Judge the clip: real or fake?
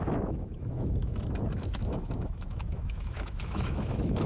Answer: fake